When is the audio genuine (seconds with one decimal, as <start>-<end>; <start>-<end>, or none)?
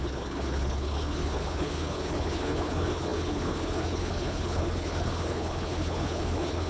none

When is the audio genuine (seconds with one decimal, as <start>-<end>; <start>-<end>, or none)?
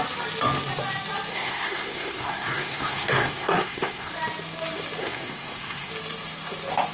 0.0-1.3; 4.1-5.0; 5.9-6.9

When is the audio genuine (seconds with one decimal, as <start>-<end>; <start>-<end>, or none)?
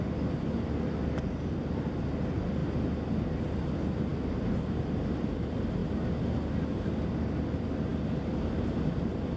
0.0-9.4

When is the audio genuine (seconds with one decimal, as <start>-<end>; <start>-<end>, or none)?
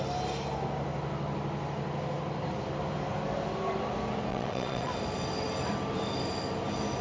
0.0-4.3; 4.9-7.0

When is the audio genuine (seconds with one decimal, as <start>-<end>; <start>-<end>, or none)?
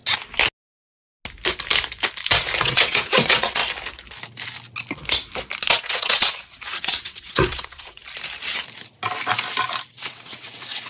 0.0-2.6; 3.6-5.8; 8.0-9.9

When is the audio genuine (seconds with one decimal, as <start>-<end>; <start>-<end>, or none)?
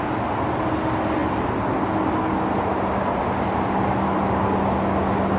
0.0-5.4